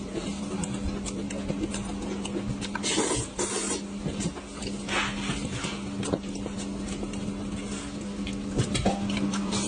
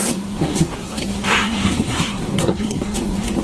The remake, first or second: second